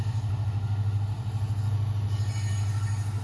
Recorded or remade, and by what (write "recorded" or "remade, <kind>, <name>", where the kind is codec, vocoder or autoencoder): recorded